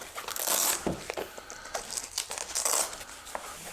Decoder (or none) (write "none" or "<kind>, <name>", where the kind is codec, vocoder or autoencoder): none